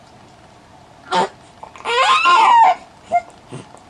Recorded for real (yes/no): yes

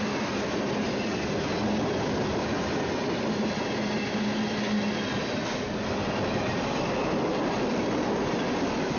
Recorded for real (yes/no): yes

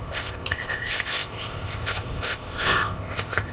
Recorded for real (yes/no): no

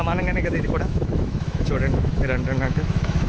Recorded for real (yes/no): no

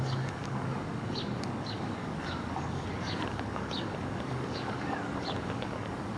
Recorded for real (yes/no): no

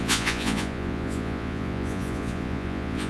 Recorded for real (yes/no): no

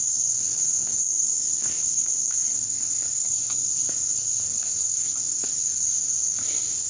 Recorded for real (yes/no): no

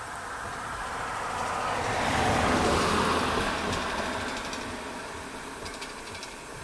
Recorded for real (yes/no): yes